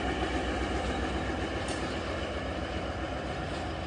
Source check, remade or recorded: recorded